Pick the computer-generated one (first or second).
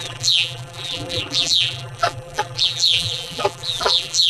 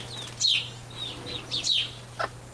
first